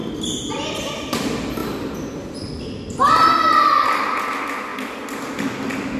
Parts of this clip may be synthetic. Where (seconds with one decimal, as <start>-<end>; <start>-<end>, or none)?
none